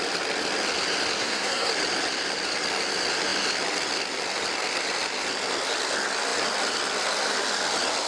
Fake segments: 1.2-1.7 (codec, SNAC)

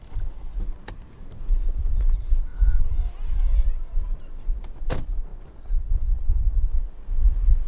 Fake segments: none

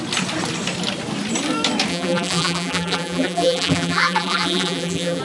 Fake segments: 1.9-5.2 (vocoder, BigVGAN v2)